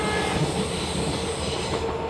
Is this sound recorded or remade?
recorded